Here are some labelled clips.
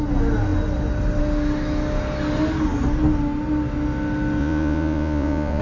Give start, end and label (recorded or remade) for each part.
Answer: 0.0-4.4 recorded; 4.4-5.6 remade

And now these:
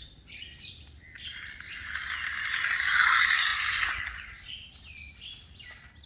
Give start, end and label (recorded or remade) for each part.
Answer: 0.0-6.1 recorded

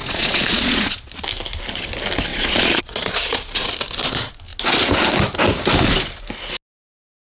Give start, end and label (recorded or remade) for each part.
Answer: 0.0-1.1 remade; 1.1-2.3 recorded; 2.3-3.7 remade; 3.7-7.4 recorded

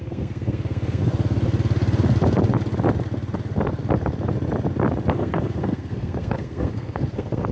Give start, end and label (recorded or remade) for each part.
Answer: 0.0-1.0 remade; 1.0-5.1 recorded; 5.1-7.5 remade

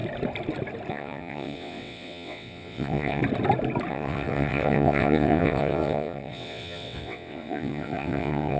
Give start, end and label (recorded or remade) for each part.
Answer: 0.0-0.9 recorded; 0.9-3.2 remade; 3.2-3.9 recorded; 3.9-8.6 remade